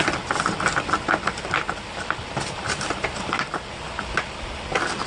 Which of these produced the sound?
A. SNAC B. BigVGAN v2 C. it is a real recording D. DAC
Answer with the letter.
C